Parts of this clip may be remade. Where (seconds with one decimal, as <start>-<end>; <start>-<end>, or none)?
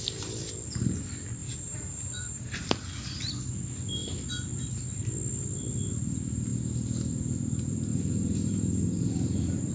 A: 1.4-2.7; 7.9-9.7